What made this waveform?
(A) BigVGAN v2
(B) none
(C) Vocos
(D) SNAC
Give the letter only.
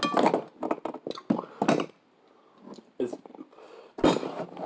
B